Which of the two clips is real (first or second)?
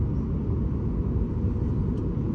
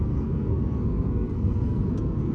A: first